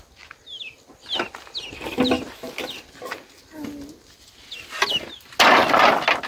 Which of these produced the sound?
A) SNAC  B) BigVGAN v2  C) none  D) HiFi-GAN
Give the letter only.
C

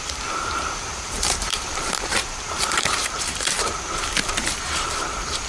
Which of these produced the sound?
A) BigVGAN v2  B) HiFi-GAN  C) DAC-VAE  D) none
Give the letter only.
A